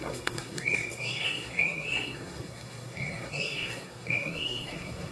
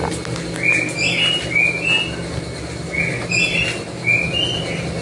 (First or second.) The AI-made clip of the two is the first